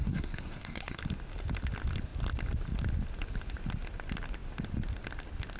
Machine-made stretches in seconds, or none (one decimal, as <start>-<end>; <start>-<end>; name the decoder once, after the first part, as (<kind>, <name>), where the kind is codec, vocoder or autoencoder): 0.0-1.0 (codec, SNAC)